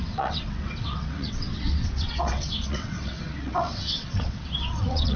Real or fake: fake